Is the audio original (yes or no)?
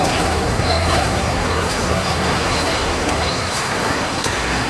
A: no